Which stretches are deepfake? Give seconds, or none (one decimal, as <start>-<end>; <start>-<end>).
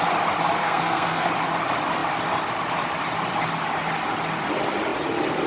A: 0.6-1.3